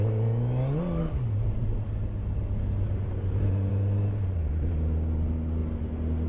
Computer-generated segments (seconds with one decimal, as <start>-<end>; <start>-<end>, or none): none